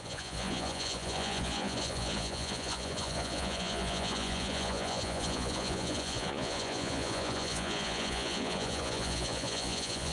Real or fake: fake